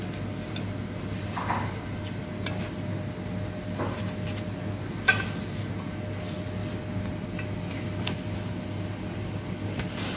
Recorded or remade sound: recorded